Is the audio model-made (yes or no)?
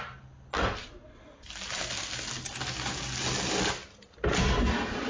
no